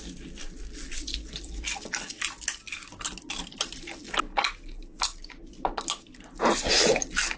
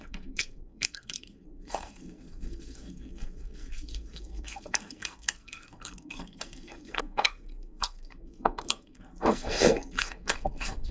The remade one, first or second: second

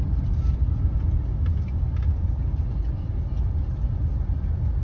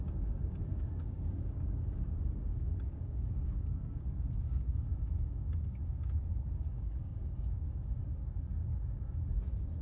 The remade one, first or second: second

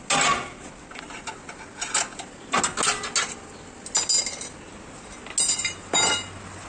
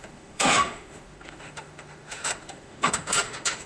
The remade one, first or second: second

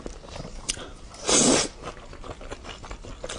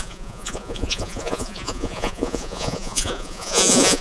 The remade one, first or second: second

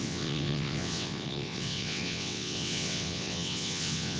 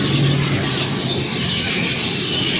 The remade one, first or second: first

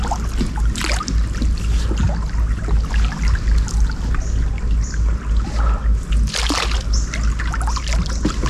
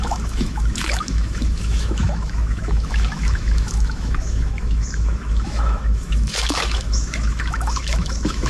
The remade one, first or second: second